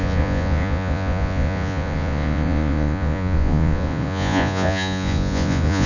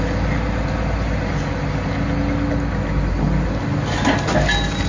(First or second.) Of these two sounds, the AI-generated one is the first